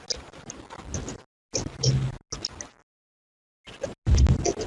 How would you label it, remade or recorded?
recorded